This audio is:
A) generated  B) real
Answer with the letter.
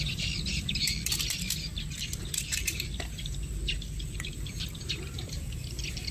A